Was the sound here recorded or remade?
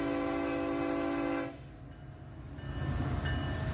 recorded